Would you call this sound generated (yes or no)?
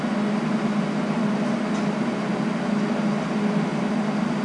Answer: no